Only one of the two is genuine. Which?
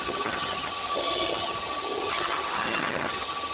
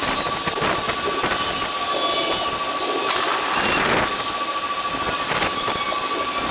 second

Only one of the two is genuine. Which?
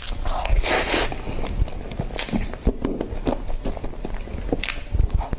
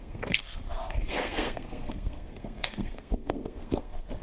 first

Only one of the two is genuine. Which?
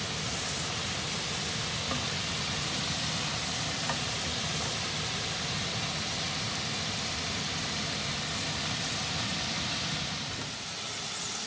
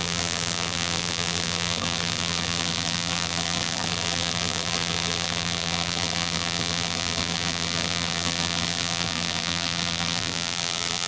first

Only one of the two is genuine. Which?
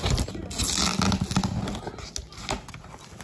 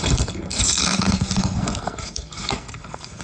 first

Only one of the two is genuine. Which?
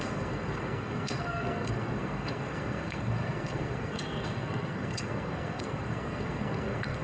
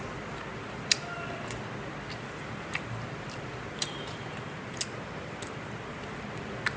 second